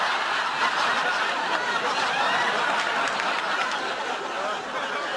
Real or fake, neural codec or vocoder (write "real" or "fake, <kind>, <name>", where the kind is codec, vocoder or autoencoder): real